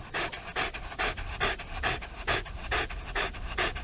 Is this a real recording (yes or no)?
yes